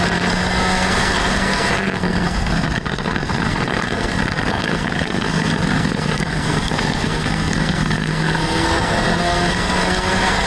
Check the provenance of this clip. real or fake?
fake